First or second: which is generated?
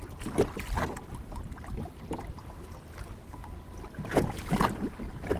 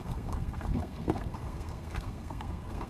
second